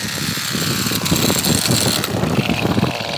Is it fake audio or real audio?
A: real